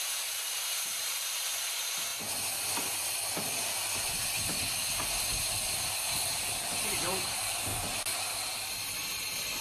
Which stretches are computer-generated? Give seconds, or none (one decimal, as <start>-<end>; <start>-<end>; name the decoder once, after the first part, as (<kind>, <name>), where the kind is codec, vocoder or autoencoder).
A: 0.0-2.1 (vocoder, BigVGAN v2); 6.9-7.7